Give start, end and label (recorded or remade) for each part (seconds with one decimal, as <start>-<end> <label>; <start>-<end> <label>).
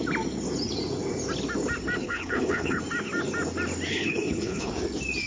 0.0-2.0 recorded; 2.0-2.8 remade; 2.8-3.9 recorded; 3.9-4.7 remade; 4.7-5.3 recorded